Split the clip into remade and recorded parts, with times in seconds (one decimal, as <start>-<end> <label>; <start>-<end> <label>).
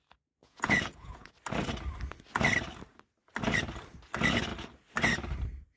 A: 0.0-0.4 recorded; 0.4-1.3 remade; 1.3-5.8 recorded